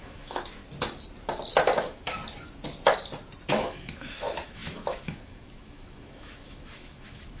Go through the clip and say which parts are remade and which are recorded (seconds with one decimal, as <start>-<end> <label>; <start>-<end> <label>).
0.0-0.6 remade; 0.6-1.8 recorded; 1.8-2.2 remade; 2.2-3.5 recorded; 3.5-7.4 remade